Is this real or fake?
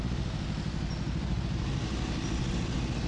real